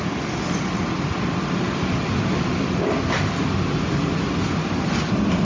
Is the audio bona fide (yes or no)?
yes